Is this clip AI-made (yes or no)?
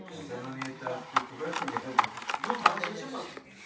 no